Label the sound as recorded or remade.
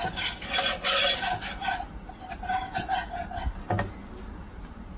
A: recorded